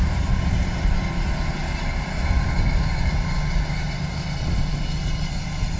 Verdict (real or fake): real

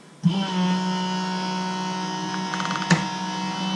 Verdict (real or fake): real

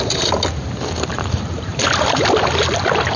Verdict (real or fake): real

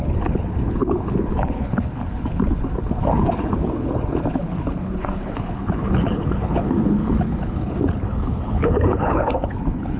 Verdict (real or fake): fake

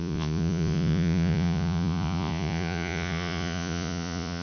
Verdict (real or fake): fake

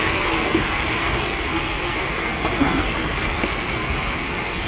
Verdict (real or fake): fake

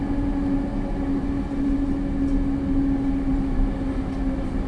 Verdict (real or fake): real